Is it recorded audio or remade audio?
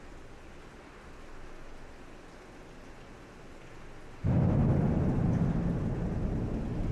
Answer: recorded